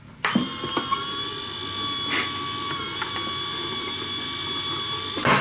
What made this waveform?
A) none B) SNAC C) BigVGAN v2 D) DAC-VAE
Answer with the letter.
A